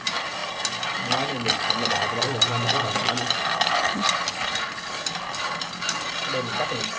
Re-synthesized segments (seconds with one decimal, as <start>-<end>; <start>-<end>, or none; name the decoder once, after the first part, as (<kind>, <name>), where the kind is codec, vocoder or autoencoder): none